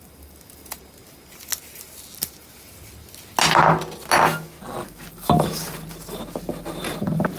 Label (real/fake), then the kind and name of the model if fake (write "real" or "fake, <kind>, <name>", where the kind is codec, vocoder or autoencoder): real